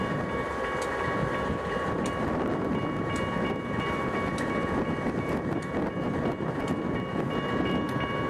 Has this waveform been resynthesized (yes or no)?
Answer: no